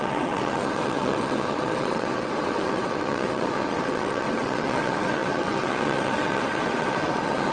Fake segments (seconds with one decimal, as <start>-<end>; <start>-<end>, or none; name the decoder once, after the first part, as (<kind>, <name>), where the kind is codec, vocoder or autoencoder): 0.0-7.5 (vocoder, WaveNeXt)